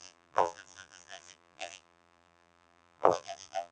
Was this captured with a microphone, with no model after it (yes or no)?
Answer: no